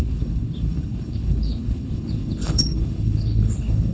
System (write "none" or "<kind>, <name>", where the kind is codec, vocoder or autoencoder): codec, HILCodec